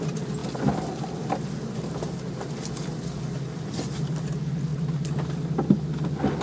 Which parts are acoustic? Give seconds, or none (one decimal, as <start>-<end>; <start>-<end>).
0.0-6.4

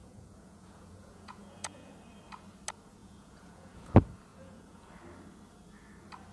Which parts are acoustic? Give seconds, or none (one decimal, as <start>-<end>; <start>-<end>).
1.9-3.0; 3.9-4.3; 4.9-6.3

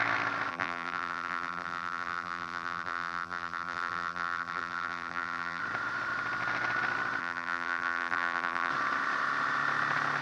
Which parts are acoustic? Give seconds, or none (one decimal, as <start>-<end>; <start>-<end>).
0.0-0.5; 5.6-7.2; 8.7-10.2